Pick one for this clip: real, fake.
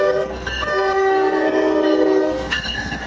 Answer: fake